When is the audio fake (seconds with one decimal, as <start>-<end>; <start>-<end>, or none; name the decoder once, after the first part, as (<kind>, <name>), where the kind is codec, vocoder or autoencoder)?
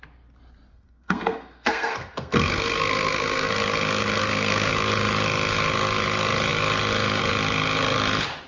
0.7-3.5 (codec, SNAC); 4.2-4.7